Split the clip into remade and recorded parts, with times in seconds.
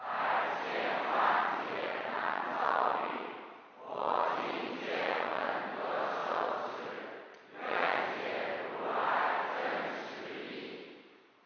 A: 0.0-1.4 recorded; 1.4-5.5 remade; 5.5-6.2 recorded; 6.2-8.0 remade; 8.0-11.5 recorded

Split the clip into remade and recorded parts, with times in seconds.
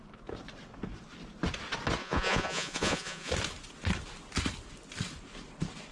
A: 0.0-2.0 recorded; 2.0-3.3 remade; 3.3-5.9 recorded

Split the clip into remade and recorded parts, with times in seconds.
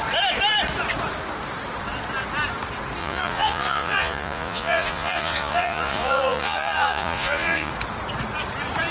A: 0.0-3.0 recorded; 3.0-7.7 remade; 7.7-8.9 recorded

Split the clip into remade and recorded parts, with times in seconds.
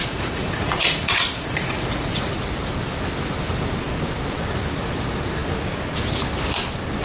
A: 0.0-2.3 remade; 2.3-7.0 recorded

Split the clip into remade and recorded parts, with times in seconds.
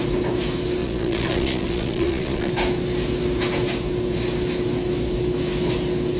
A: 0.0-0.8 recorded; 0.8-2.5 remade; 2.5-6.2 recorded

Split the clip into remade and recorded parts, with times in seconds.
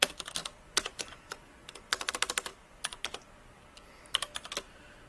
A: 0.0-0.4 recorded; 0.4-2.1 remade; 2.1-2.5 recorded; 2.5-3.3 remade; 3.3-5.1 recorded